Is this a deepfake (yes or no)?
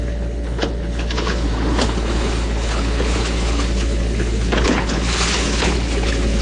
yes